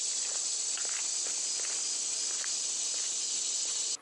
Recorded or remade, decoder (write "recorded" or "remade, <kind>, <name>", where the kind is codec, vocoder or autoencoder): recorded